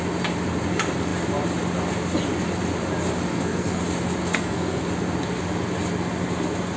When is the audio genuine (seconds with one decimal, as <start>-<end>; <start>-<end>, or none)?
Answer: 0.0-3.3; 3.8-4.2; 4.8-6.8